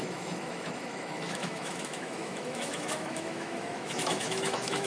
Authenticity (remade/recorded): remade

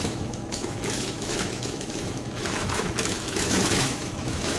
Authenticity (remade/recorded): remade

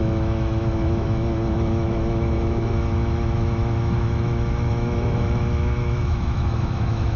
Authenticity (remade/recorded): remade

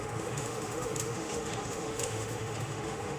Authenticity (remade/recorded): remade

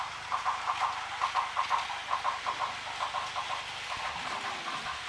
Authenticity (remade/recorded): recorded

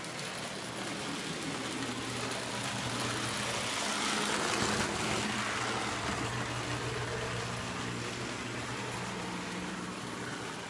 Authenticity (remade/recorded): recorded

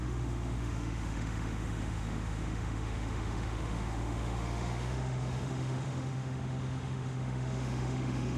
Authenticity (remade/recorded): remade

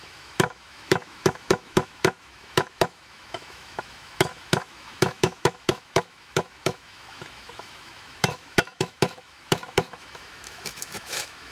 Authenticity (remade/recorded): remade